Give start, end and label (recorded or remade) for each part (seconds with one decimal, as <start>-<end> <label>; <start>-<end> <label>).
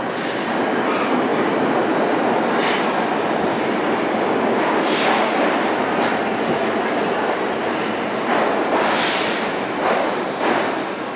0.0-11.2 recorded